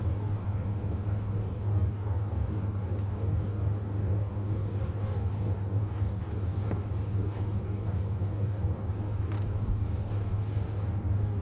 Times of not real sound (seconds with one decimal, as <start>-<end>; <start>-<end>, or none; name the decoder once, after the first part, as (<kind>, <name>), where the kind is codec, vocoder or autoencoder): 0.0-11.4 (codec, DAC)